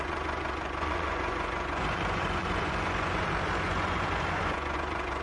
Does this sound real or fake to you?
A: fake